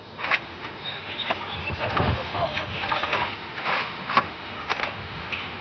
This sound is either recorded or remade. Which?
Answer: remade